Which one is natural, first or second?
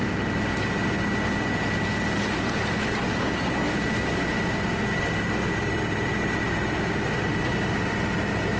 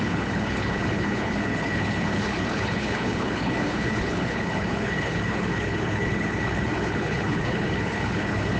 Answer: first